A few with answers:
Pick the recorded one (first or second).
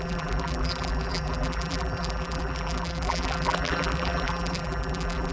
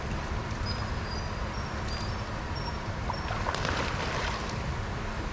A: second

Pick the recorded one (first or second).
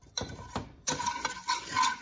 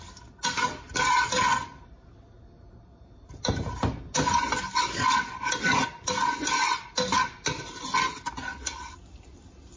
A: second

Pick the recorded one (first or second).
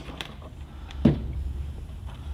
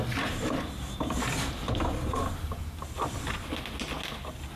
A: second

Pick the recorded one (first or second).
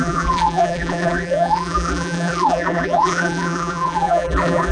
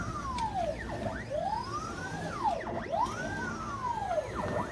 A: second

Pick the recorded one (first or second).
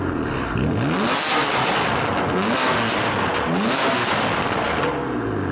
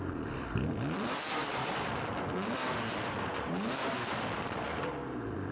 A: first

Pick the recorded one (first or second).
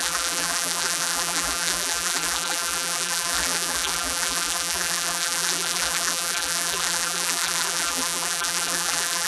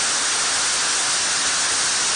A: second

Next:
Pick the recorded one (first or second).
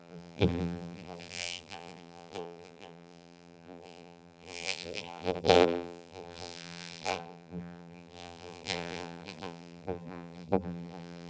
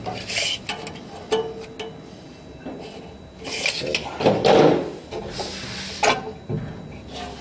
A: second